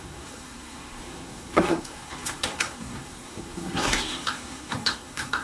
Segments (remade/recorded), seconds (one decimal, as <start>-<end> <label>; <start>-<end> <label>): 0.0-5.4 remade